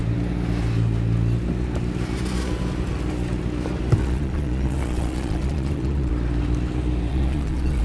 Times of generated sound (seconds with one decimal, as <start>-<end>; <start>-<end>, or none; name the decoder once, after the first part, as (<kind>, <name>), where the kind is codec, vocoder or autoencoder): 4.0-6.1 (vocoder, Vocos); 7.1-7.8